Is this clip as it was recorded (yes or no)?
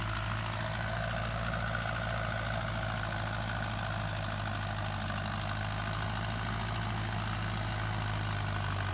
yes